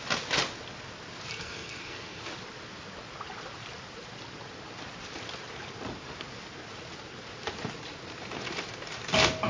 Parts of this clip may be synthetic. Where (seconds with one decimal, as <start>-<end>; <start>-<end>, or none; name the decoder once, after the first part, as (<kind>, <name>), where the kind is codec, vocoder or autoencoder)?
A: 1.3-2.2 (codec, SNAC)